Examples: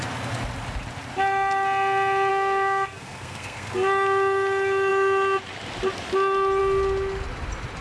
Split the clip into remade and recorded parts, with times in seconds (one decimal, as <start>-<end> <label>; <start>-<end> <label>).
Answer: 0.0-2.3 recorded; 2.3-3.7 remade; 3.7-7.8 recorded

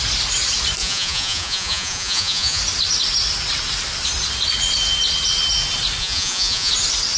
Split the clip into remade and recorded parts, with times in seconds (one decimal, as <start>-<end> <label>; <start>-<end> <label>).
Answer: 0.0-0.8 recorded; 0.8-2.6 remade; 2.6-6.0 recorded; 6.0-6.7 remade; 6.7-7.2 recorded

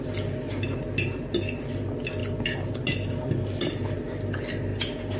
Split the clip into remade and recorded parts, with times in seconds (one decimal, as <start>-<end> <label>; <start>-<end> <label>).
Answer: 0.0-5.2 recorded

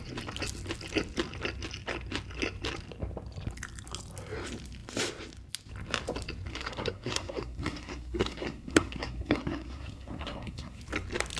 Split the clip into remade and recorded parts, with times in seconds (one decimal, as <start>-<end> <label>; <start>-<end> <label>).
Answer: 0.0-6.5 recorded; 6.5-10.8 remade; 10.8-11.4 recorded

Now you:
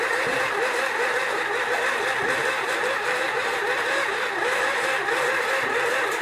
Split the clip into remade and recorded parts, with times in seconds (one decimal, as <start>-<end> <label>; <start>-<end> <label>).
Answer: 0.0-1.2 remade; 1.2-2.4 recorded; 2.4-6.2 remade